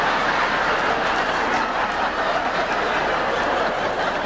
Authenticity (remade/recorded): recorded